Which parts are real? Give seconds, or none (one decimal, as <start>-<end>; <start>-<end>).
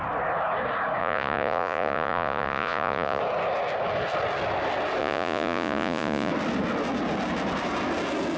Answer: 0.0-1.0; 3.2-5.0; 6.3-8.4